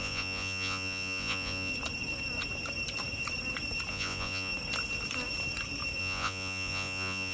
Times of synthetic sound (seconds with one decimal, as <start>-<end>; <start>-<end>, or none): 0.0-1.7; 3.9-4.5; 6.0-7.3